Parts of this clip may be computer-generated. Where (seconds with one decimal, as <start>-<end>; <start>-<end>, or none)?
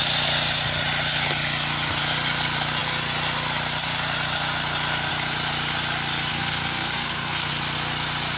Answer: 6.3-7.5